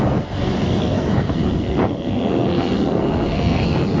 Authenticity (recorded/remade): remade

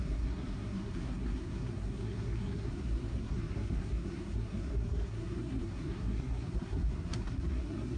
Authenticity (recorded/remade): remade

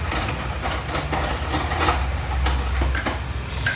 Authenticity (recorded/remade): recorded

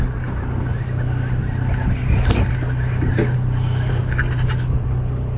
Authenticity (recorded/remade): recorded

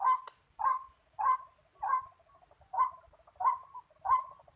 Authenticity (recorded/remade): recorded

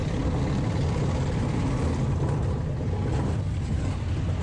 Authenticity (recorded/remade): recorded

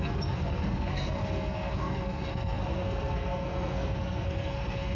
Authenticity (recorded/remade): remade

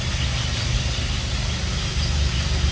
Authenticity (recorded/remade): recorded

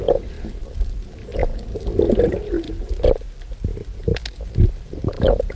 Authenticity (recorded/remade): recorded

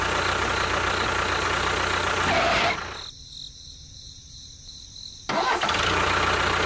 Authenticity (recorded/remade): recorded